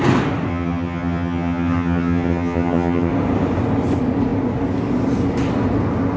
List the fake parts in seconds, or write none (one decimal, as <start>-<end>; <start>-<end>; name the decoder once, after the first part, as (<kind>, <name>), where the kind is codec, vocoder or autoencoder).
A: 0.5-3.1 (vocoder, HiFi-GAN)